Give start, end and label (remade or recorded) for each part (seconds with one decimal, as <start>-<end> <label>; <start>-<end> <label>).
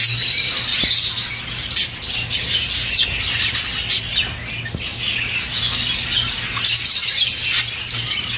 0.0-8.4 recorded